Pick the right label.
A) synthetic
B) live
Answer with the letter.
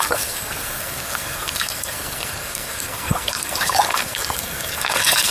A